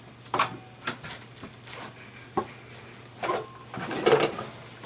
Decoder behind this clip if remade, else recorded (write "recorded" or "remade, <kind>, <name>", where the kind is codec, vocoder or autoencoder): recorded